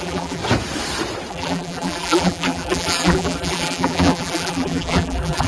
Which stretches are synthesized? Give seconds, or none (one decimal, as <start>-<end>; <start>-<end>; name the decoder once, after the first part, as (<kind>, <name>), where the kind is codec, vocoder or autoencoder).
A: 0.0-0.4 (vocoder, BigVGAN v2); 1.3-5.5

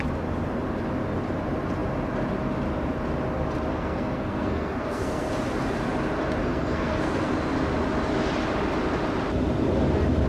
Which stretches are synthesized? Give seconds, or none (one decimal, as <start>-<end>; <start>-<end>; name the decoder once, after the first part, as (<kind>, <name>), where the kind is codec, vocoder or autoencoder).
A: 3.7-5.3 (codec, SNAC); 6.4-7.3

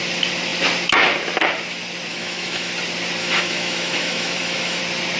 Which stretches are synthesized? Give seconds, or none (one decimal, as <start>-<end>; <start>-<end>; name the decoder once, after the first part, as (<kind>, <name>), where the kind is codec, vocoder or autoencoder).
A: 2.1-2.7 (autoencoder, DAC-VAE); 3.2-4.8

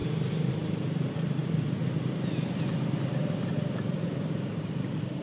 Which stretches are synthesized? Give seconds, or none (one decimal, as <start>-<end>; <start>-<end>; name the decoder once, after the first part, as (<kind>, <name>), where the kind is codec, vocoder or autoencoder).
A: none

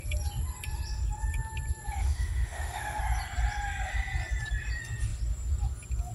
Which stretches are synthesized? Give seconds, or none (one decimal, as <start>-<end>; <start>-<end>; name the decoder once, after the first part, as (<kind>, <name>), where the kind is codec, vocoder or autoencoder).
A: 2.0-3.0 (autoencoder, DAC-VAE)

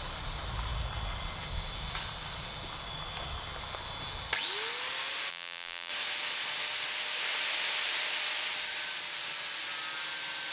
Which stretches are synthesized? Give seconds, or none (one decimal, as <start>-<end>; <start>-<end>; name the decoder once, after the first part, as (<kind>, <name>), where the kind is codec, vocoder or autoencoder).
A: 5.3-5.9 (vocoder, BigVGAN v2)

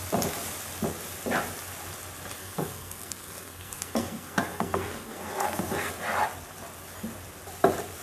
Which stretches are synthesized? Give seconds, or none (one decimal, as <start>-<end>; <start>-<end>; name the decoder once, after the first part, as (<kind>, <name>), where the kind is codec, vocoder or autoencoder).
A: 2.4-5.9 (codec, SNAC)